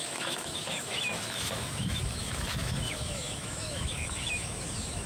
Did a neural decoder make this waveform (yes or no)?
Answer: yes